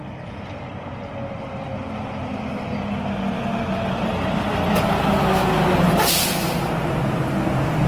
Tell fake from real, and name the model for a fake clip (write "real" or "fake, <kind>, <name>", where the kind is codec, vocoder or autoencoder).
real